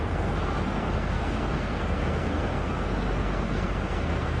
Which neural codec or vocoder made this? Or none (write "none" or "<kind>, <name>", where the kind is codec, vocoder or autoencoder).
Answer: codec, SNAC